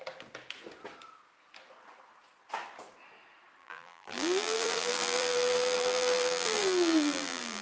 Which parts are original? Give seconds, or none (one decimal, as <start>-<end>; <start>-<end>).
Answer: 0.0-3.6